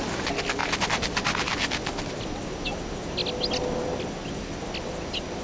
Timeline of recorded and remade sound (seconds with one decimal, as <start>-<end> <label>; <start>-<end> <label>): 0.0-5.4 recorded